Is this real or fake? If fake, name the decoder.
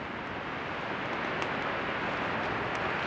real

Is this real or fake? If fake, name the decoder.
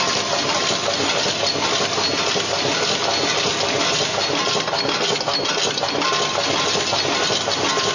real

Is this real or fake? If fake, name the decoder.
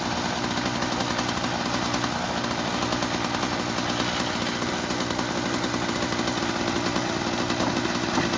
real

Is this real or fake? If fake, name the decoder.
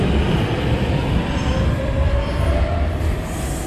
real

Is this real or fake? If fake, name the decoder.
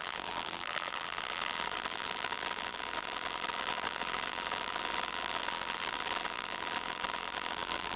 fake, vocoder, BigVGAN v2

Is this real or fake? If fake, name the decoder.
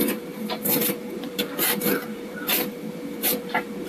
fake, vocoder, BigVGAN v2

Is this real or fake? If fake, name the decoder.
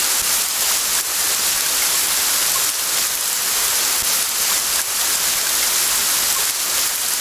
real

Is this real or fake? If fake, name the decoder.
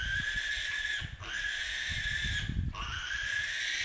real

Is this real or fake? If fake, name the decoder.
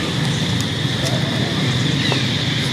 fake, vocoder, BigVGAN v2